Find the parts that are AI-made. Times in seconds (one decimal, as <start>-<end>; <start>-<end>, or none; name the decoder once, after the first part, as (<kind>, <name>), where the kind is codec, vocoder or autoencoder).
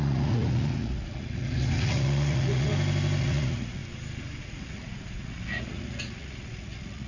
0.0-2.7 (vocoder, Vocos); 3.2-3.8; 4.4-7.1